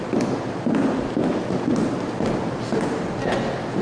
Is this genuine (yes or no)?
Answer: yes